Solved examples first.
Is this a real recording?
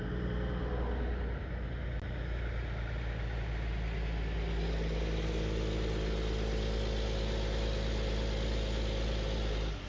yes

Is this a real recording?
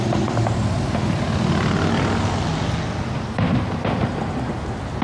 yes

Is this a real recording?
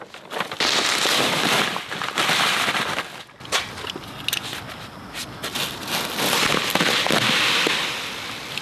yes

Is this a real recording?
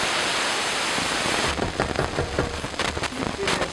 yes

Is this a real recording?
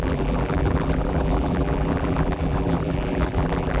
no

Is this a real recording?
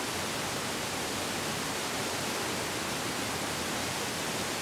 yes